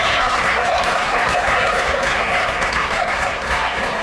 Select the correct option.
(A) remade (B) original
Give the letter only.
A